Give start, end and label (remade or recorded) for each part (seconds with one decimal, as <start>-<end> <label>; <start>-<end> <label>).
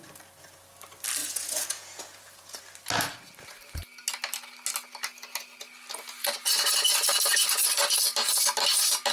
0.0-1.2 recorded; 1.2-2.6 remade; 2.6-9.1 recorded